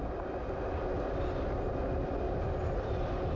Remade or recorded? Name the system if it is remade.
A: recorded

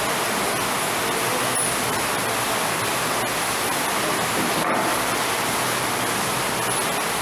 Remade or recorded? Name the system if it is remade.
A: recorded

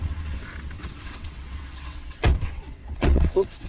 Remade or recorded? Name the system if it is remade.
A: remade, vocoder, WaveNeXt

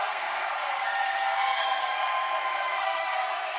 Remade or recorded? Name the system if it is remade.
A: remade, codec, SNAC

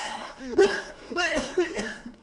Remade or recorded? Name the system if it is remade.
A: remade, codec, SNAC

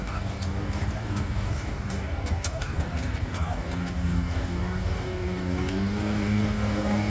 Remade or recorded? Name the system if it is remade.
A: remade, codec, DAC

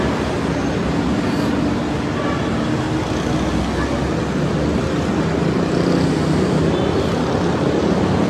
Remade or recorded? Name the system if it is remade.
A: recorded